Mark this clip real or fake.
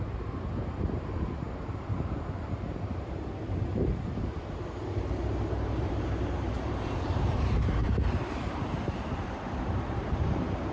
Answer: fake